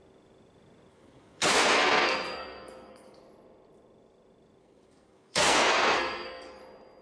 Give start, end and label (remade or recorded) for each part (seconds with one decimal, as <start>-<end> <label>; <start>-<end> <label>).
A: 0.0-0.9 recorded; 0.9-3.2 remade; 3.2-4.6 recorded; 4.6-6.6 remade; 6.6-7.0 recorded